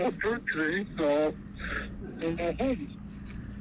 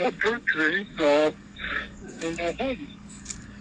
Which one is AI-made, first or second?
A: second